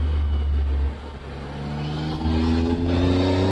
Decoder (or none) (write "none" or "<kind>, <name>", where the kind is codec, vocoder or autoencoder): none